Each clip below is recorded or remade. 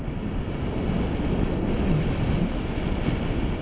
recorded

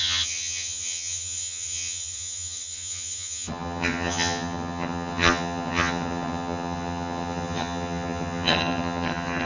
remade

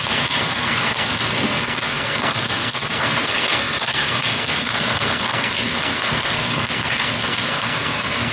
remade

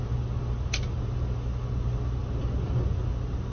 recorded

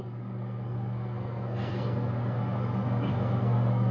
remade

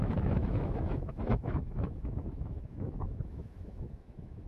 remade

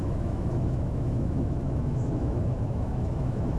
remade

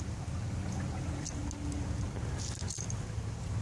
recorded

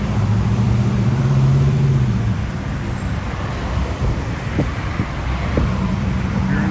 remade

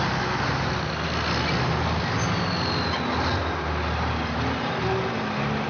recorded